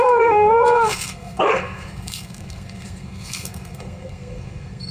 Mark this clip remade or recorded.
remade